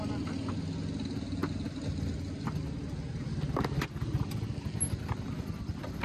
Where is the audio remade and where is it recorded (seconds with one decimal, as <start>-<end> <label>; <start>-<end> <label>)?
0.0-6.0 recorded